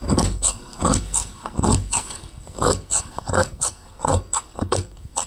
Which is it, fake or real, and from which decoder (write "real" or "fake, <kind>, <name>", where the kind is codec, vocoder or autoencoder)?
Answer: fake, codec, SNAC